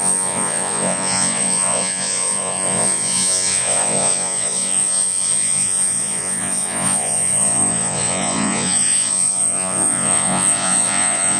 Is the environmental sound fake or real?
fake